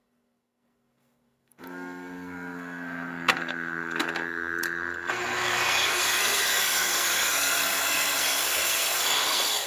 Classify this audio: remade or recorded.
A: remade